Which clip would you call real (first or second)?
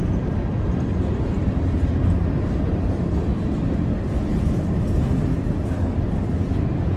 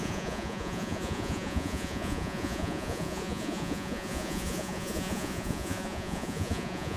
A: first